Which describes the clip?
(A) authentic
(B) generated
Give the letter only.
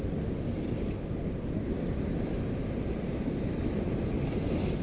A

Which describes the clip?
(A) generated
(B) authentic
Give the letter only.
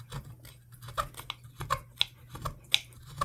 B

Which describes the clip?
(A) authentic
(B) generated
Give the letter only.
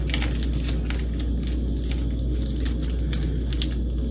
A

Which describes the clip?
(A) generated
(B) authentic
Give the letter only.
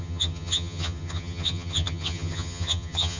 A